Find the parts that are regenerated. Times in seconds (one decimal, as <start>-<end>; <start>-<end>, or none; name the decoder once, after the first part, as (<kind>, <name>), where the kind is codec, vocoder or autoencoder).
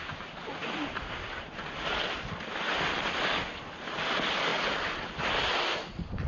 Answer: none